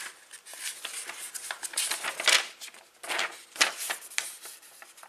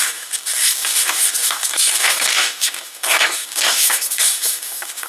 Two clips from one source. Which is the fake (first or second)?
second